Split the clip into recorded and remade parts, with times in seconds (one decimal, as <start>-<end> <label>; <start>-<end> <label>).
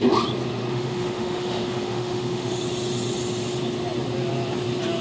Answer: 0.0-0.7 recorded; 0.7-2.6 remade; 2.6-5.0 recorded